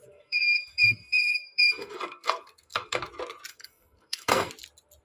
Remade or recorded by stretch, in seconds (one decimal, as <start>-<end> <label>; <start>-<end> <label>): 0.0-3.0 remade; 3.0-3.5 recorded; 3.5-4.5 remade; 4.5-5.0 recorded